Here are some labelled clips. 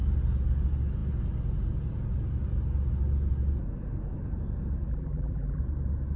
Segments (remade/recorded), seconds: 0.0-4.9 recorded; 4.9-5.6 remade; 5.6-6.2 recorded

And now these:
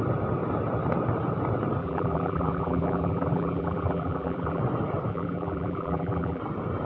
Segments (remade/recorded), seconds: 0.0-1.8 recorded; 1.8-4.6 remade; 4.6-5.1 recorded; 5.1-6.4 remade; 6.4-6.9 recorded

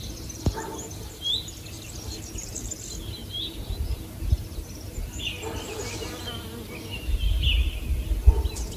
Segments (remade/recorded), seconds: 0.0-3.2 recorded; 3.2-5.3 remade; 5.3-8.8 recorded

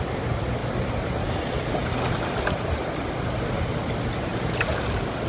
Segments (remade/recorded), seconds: 0.0-0.6 remade; 0.6-3.8 recorded; 3.8-4.3 remade; 4.3-5.3 recorded